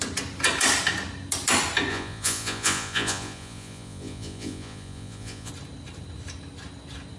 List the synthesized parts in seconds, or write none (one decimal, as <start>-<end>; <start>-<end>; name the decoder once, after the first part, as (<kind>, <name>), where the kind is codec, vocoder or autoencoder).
1.9-5.5 (vocoder, Vocos)